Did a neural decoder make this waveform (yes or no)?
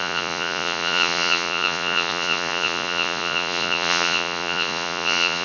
yes